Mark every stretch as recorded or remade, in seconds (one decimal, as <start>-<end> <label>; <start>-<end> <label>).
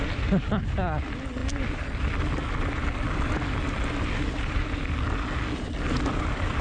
0.0-6.6 recorded